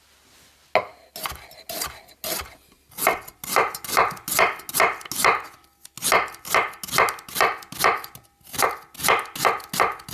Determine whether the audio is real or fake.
real